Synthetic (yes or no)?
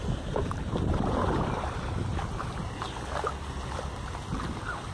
no